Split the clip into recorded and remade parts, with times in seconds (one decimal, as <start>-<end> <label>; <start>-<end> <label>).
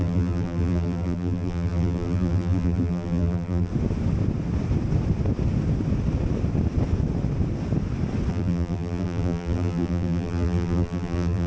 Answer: 0.0-3.7 remade; 3.7-8.3 recorded; 8.3-11.5 remade